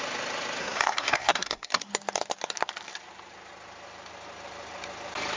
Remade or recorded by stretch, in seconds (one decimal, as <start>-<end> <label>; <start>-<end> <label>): 0.0-0.6 recorded; 0.6-1.9 remade; 1.9-5.4 recorded